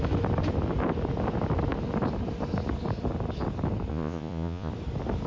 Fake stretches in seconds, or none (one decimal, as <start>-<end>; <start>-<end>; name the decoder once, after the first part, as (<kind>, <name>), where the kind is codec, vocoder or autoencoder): 3.9-4.7 (vocoder, Vocos)